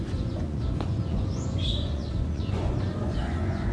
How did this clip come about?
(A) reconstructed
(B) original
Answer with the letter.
A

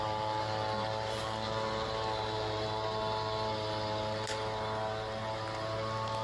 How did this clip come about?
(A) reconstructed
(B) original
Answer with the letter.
B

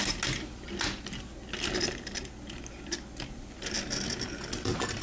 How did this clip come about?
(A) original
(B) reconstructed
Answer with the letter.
A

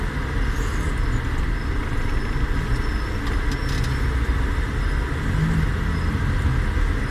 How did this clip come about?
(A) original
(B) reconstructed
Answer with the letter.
A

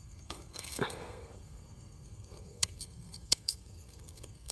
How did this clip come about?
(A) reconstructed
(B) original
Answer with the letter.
A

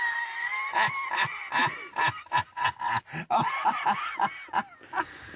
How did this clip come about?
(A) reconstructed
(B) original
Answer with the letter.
B